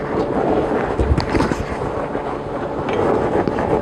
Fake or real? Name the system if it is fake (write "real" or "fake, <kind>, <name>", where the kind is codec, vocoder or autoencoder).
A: real